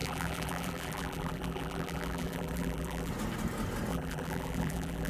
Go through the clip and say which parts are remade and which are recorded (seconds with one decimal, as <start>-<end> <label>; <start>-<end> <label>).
0.0-3.1 remade; 3.1-3.9 recorded; 3.9-5.1 remade